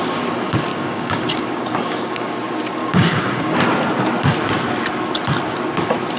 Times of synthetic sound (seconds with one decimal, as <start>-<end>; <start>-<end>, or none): 0.7-2.3; 2.8-3.6